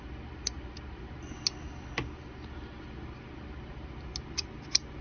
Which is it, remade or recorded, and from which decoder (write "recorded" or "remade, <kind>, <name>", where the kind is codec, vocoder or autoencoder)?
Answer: recorded